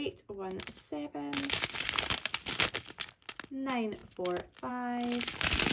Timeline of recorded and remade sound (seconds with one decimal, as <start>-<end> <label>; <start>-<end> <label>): 0.0-5.7 recorded